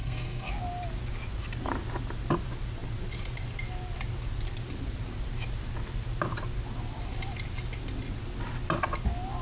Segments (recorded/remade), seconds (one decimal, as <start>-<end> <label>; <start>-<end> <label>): 0.0-0.5 remade; 0.5-9.4 recorded

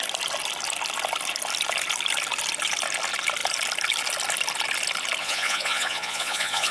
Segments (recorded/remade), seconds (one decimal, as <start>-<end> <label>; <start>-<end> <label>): 0.0-5.2 recorded; 5.2-6.7 remade

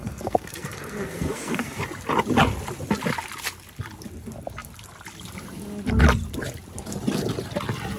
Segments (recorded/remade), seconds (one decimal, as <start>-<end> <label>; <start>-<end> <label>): 0.0-1.8 remade; 1.8-8.0 recorded

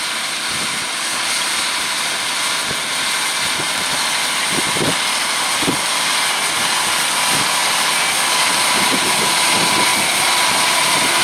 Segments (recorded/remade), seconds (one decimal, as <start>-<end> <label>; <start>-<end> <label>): 0.0-11.2 recorded

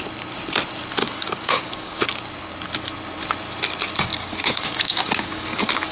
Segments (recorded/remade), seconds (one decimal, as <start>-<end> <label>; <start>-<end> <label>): 0.0-1.0 recorded; 1.0-2.0 remade; 2.0-4.1 recorded; 4.1-5.9 remade

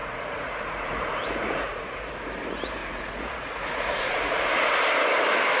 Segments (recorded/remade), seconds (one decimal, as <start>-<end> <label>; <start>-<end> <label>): 0.0-2.1 remade; 2.1-2.8 recorded; 2.8-4.5 remade; 4.5-5.6 recorded

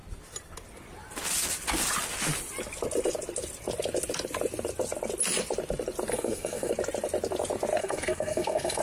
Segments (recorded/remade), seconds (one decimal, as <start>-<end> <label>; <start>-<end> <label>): 0.0-6.1 recorded; 6.1-6.7 remade; 6.7-7.8 recorded; 7.8-8.8 remade